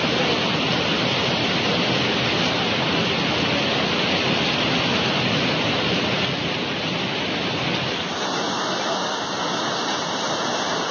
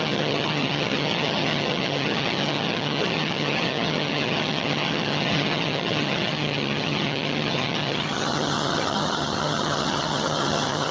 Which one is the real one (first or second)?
first